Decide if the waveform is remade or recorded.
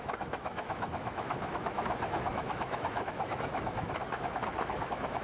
remade